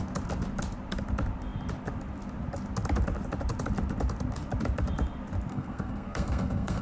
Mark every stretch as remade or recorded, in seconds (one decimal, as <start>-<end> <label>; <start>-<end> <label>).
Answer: 0.0-5.5 recorded; 5.5-6.8 remade